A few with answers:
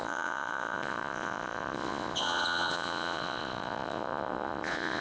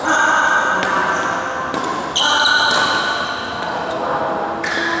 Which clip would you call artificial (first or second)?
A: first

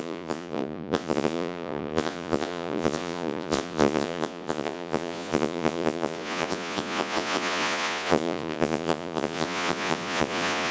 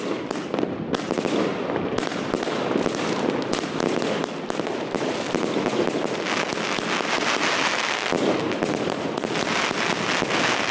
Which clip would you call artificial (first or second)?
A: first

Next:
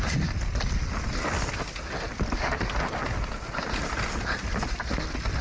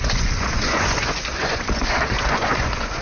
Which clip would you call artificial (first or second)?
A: second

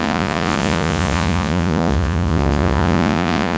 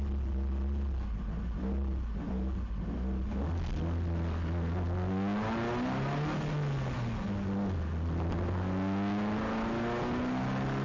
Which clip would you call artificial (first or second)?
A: first